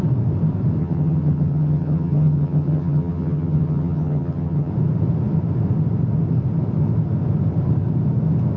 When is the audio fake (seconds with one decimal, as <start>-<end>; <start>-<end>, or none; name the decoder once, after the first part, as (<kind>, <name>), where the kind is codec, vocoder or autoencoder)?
0.8-4.7 (vocoder, HiFi-GAN)